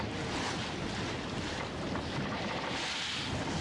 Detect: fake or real real